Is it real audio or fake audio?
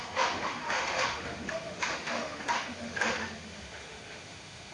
fake